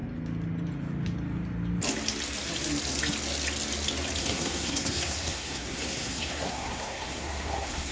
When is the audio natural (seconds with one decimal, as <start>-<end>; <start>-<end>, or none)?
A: 0.0-4.2